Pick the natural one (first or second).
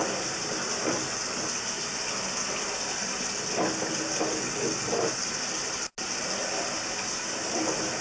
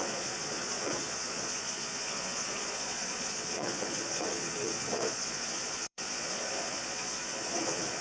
first